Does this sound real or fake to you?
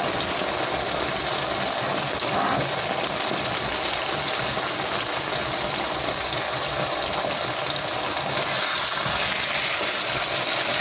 real